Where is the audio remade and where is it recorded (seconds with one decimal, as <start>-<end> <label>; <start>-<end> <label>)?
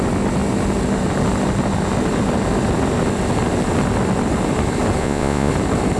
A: 0.0-5.0 recorded; 5.0-5.5 remade; 5.5-6.0 recorded